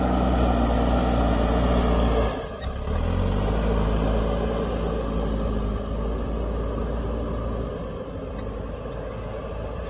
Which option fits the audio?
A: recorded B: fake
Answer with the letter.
A